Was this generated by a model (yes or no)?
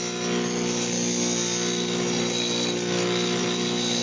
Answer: no